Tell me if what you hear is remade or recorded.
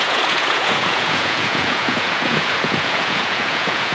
remade